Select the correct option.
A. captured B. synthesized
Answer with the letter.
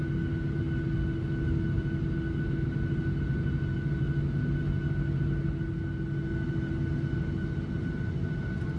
A